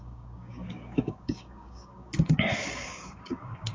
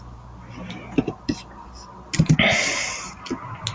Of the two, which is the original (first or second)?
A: second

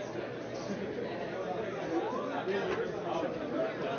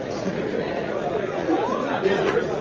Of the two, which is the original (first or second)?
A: first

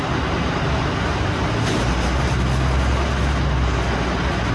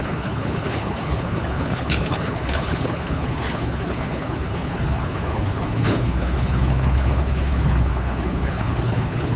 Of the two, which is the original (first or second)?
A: first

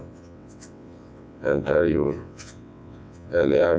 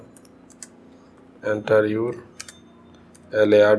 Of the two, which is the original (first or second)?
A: second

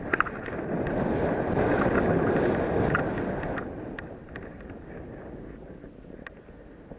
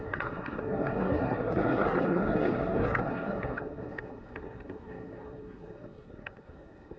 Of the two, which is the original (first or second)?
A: first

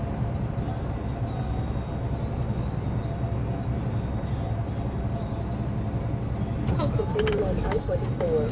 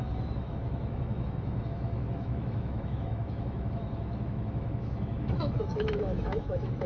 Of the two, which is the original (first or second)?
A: first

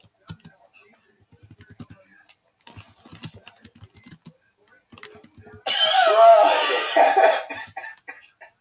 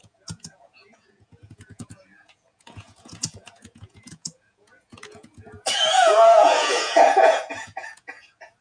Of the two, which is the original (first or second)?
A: first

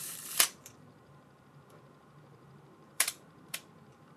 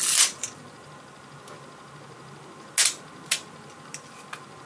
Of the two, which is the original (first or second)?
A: second